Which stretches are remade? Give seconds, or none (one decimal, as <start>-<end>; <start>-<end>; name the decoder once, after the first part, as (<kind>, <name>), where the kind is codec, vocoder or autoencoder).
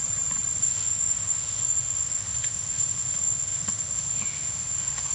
0.6-5.1 (autoencoder, DAC-VAE)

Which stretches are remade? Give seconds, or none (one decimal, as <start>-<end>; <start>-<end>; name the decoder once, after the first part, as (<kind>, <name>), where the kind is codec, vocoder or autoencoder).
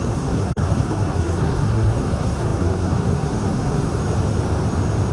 0.0-4.0 (codec, SNAC)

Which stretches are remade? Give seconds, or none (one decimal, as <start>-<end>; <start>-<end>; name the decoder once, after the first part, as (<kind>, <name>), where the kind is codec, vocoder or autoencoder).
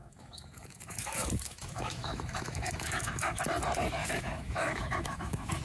0.0-3.4 (autoencoder, DAC-VAE); 4.0-5.6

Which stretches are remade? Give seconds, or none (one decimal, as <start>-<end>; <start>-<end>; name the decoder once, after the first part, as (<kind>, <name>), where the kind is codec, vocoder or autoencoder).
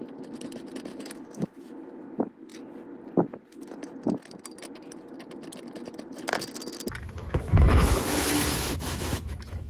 0.9-2.0 (autoencoder, DAC-VAE); 7.2-9.7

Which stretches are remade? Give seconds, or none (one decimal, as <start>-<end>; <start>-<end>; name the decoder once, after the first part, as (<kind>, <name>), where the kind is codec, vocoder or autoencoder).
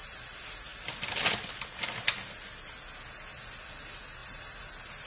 none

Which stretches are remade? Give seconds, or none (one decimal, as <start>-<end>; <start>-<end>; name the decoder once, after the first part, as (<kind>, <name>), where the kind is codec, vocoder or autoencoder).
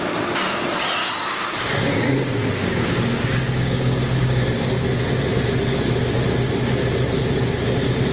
1.0-4.5 (codec, DAC)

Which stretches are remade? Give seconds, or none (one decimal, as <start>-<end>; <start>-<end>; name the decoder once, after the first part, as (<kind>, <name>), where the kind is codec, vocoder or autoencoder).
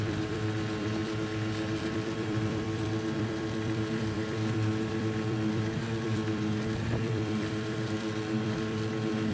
0.0-9.3 (vocoder, BigVGAN v2)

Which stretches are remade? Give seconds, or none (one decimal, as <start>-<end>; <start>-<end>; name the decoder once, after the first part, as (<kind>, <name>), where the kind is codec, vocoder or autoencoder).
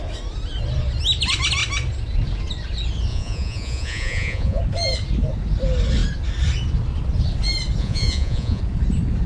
3.1-4.6 (vocoder, Vocos); 7.8-8.6